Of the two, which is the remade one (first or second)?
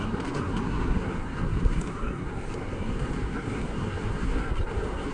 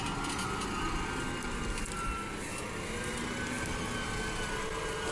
first